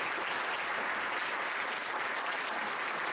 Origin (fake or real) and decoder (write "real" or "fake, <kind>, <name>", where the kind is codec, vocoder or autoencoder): real